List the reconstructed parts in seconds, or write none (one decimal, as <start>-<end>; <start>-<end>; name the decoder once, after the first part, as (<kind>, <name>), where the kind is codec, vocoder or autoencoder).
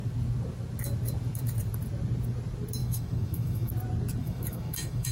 2.8-3.7 (autoencoder, DAC-VAE); 4.2-5.1